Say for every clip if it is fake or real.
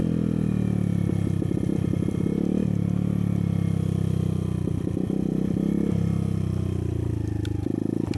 real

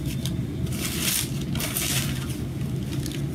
real